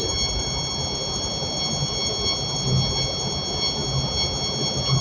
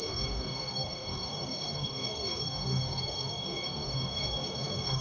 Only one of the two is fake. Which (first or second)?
second